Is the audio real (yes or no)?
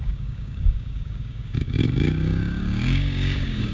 no